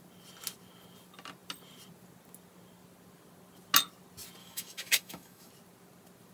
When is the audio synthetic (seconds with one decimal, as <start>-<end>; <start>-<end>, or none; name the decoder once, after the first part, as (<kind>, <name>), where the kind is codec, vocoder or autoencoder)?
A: 4.4-5.5 (autoencoder, DAC-VAE)